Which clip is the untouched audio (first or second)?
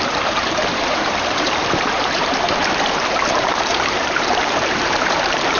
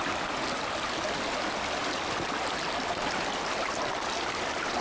second